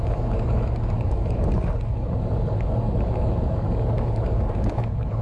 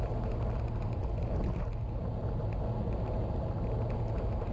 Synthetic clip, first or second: first